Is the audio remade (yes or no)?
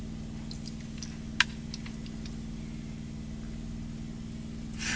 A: no